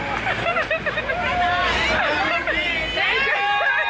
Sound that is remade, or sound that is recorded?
recorded